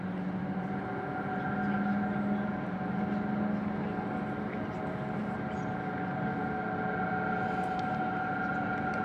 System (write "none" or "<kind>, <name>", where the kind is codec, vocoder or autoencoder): none